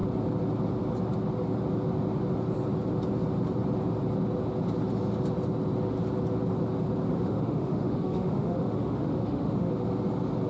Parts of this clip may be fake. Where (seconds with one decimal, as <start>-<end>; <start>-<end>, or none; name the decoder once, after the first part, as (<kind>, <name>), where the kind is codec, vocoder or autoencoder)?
7.1-9.7 (autoencoder, DAC-VAE)